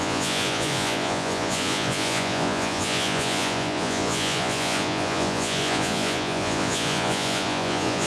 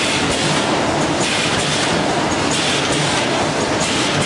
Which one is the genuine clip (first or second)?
second